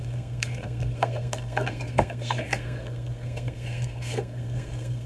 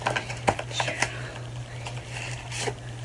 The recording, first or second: second